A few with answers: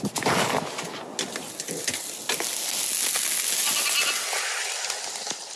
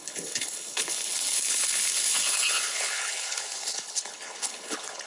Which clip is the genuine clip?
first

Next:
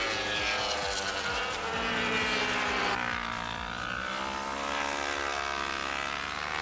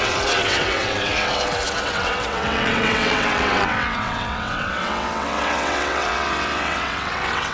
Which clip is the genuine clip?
first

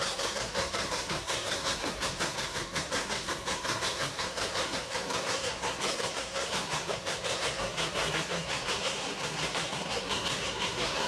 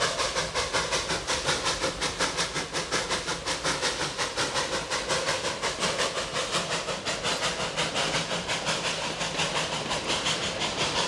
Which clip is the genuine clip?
second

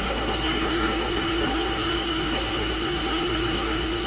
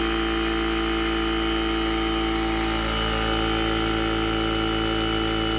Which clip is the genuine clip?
second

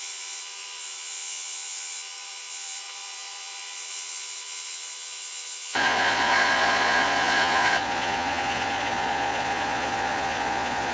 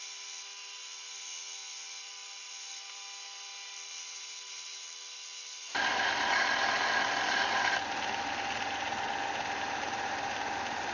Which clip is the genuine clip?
second